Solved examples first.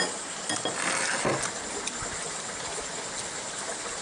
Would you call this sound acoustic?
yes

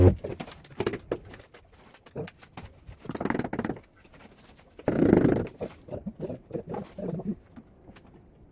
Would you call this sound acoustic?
yes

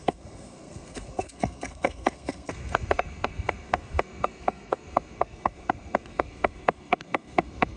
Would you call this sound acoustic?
no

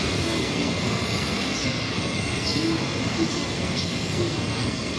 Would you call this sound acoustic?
no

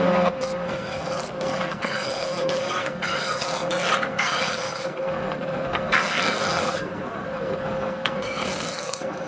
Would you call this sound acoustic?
no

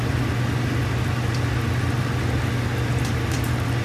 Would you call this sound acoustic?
yes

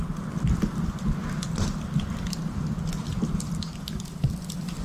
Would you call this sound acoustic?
yes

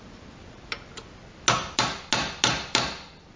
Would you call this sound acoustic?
yes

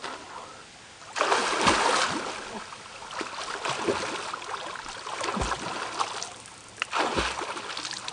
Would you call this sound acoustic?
yes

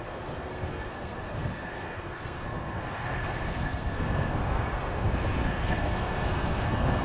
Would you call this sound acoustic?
no